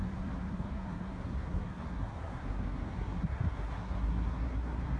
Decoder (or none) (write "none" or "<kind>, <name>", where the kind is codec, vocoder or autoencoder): codec, SNAC